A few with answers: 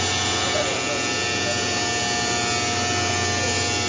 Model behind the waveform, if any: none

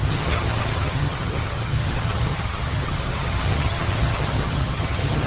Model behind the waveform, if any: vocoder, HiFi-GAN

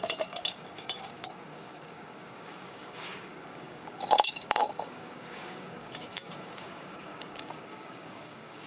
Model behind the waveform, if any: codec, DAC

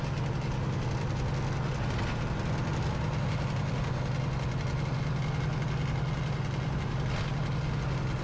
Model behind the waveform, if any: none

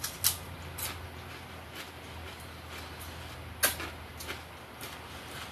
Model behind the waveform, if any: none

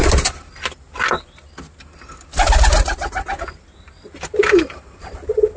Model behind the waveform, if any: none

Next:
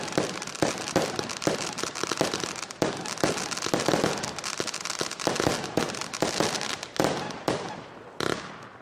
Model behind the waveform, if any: none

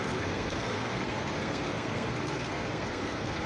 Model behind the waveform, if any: codec, SNAC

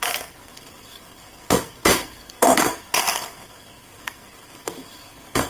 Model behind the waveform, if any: codec, SNAC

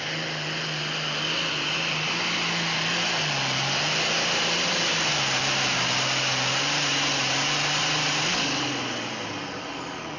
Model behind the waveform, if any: none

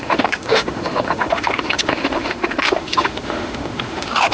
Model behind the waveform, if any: autoencoder, DAC-VAE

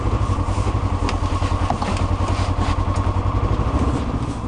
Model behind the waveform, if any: none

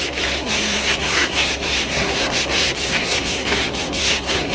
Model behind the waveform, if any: codec, SNAC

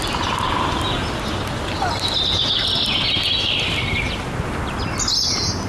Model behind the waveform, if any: none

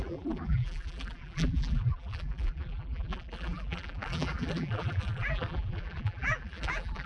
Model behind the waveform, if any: vocoder, BigVGAN v2